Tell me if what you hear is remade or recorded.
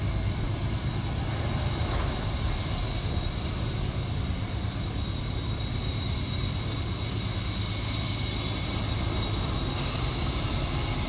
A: recorded